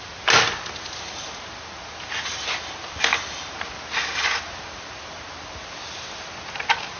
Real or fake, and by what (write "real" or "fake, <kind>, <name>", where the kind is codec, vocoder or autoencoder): real